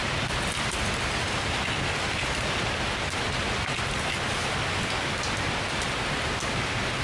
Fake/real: real